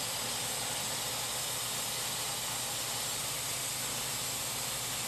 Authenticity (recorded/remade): recorded